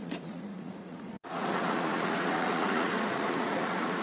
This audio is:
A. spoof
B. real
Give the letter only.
A